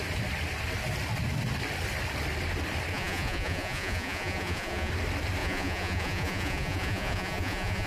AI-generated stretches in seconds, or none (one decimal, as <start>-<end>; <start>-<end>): 2.9-4.9; 5.4-7.9